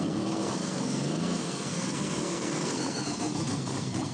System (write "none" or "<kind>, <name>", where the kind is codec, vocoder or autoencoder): codec, SNAC